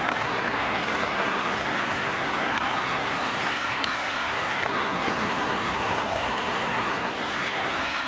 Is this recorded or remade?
remade